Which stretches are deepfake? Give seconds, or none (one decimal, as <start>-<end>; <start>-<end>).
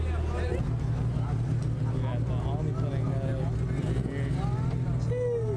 none